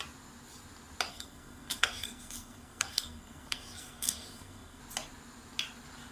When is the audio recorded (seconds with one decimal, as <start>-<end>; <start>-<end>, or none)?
0.0-1.1; 4.8-6.1

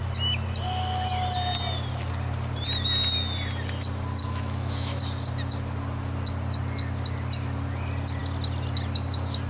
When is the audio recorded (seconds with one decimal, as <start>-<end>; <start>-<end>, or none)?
0.0-4.2; 5.0-9.5

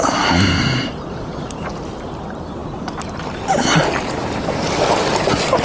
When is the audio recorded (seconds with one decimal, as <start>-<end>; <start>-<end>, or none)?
0.0-5.6

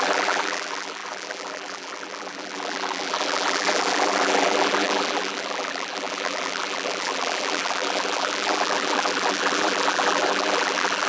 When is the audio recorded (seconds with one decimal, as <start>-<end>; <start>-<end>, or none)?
none

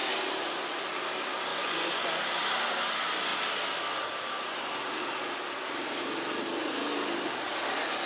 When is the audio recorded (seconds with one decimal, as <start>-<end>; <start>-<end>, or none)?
0.0-1.5; 2.1-8.1

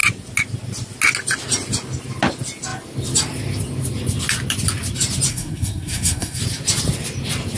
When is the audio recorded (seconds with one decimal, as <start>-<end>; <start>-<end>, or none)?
0.0-5.3; 6.4-7.6

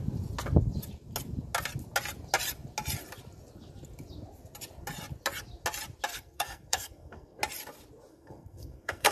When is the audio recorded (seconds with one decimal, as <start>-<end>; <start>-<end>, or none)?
0.0-6.1; 7.4-8.1

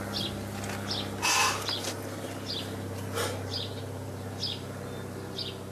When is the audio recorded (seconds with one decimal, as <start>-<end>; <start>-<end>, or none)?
0.0-1.4; 4.8-5.7